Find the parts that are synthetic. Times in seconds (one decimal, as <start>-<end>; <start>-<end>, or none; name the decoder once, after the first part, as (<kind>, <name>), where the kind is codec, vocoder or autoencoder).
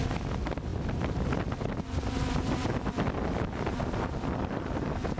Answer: none